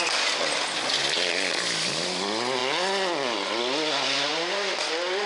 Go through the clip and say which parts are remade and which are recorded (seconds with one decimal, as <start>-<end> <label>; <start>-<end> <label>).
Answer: 0.0-5.3 recorded

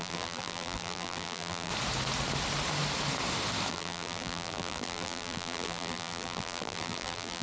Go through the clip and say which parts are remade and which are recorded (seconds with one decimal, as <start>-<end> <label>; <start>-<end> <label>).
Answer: 0.0-1.7 remade; 1.7-3.7 recorded; 3.7-7.4 remade

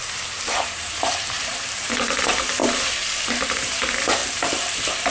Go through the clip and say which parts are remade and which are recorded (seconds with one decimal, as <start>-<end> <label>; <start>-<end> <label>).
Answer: 0.0-2.6 remade; 2.6-3.4 recorded; 3.4-4.2 remade; 4.2-5.1 recorded